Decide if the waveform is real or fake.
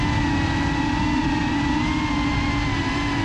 real